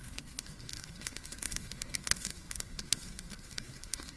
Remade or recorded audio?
remade